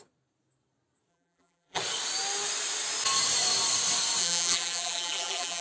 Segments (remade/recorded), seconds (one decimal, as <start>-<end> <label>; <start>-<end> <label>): 0.0-1.1 recorded; 1.1-1.8 remade; 1.8-4.2 recorded; 4.2-5.6 remade